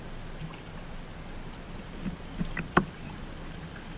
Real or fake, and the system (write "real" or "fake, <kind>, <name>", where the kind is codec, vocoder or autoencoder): real